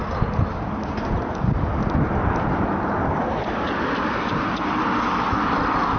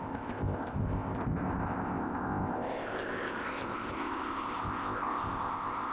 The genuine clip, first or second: first